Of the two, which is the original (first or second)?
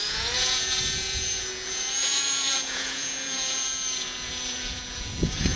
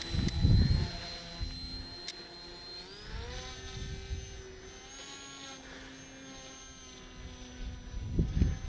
second